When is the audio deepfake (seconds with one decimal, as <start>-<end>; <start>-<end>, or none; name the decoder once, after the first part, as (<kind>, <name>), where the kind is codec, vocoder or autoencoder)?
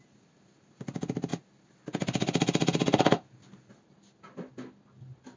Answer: none